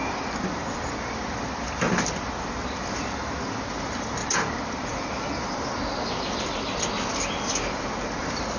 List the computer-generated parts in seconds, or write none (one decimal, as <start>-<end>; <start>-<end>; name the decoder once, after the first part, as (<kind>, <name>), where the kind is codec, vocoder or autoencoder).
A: 0.0-4.2 (vocoder, BigVGAN v2); 7.7-8.6